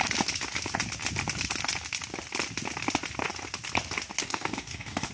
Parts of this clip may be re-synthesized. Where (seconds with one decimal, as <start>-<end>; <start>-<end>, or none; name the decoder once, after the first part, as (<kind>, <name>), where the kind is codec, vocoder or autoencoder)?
4.2-5.1 (codec, DAC)